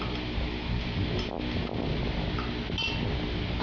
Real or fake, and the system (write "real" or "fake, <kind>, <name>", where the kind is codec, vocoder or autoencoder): real